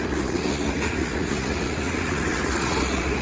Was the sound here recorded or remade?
remade